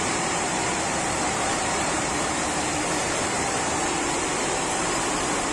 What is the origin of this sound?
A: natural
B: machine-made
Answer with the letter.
B